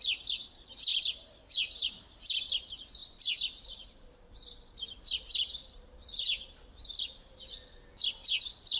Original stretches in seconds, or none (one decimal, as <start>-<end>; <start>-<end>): 0.0-3.0; 7.3-8.8